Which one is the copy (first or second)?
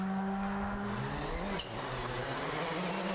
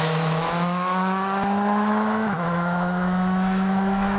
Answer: second